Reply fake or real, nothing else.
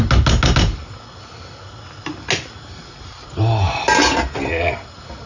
real